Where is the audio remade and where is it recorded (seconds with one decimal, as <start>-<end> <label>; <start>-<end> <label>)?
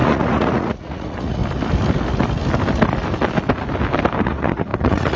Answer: 0.0-1.4 remade; 1.4-4.2 recorded; 4.2-5.2 remade